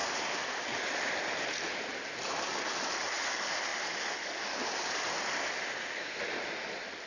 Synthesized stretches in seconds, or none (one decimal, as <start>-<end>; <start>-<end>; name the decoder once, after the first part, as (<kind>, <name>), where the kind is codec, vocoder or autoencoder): 5.7-6.2 (codec, SNAC)